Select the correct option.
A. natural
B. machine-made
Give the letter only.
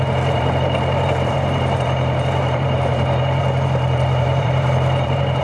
B